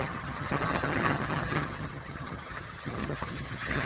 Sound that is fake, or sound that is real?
fake